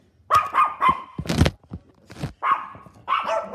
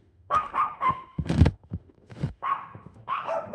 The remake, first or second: second